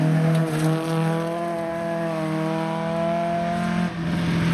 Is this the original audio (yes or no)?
yes